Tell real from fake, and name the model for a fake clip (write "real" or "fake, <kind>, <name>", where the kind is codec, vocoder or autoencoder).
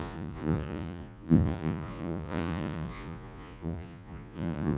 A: fake, vocoder, Vocos